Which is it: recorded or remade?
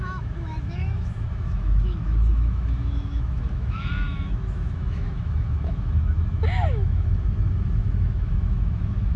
remade